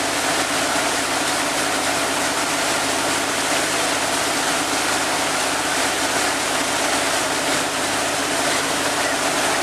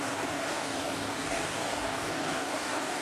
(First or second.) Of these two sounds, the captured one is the first